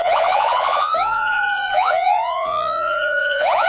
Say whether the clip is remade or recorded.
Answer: remade